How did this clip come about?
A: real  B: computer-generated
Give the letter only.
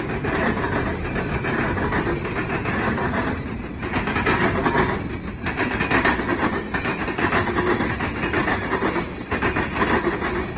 A